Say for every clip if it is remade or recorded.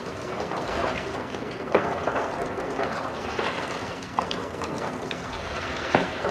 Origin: remade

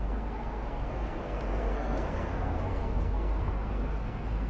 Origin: remade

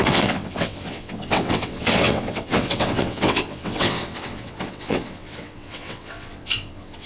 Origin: remade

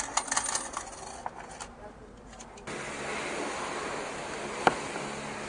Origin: recorded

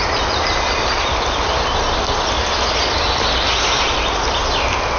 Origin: recorded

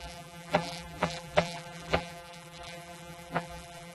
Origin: remade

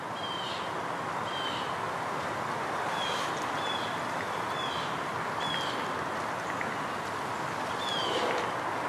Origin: recorded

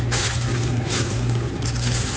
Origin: remade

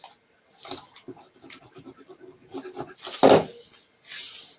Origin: recorded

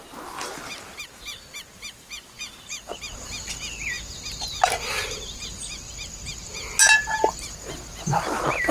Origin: recorded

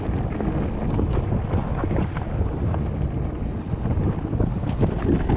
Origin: recorded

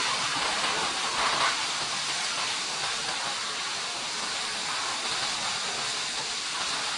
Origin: recorded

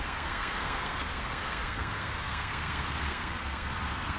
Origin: remade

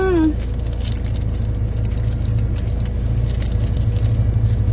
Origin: recorded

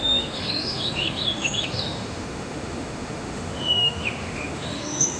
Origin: remade